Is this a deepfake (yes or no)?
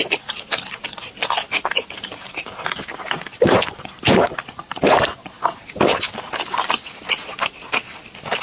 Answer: no